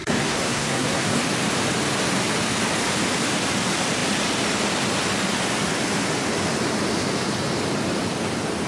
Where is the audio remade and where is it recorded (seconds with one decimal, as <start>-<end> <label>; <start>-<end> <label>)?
0.0-1.2 remade; 1.2-8.7 recorded